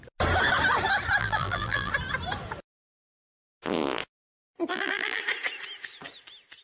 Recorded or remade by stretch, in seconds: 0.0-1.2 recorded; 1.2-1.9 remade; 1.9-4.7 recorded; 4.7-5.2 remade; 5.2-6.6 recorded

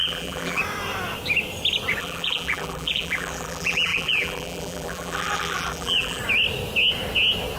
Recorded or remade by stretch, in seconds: 0.0-0.6 remade; 0.6-2.0 recorded; 2.0-6.2 remade; 6.2-7.6 recorded

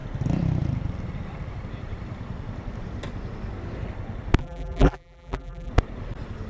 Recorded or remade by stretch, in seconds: 0.0-4.4 recorded; 4.4-5.7 remade; 5.7-6.5 recorded

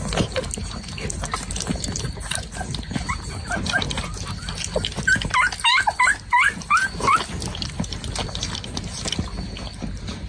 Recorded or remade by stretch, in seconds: 0.0-10.3 recorded

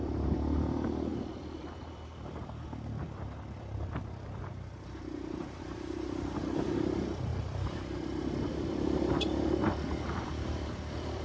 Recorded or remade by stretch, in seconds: 0.0-11.2 remade

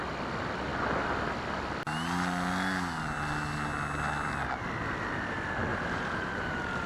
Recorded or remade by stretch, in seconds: 0.0-5.7 recorded; 5.7-6.9 remade

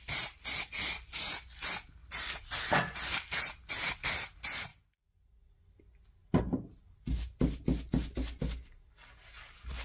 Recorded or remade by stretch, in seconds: 0.0-9.8 recorded